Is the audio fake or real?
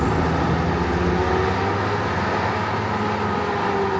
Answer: real